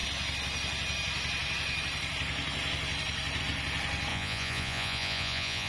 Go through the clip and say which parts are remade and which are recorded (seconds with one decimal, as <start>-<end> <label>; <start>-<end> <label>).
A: 0.0-4.1 recorded; 4.1-5.7 remade